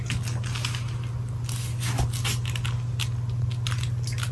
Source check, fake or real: real